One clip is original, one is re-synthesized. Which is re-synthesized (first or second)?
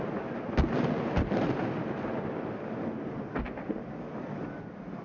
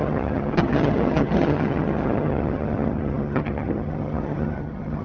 second